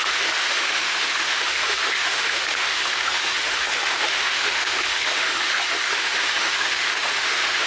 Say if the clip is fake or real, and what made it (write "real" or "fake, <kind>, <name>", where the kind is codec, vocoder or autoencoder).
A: fake, autoencoder, DAC-VAE